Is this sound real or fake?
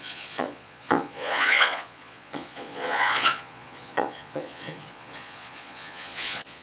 fake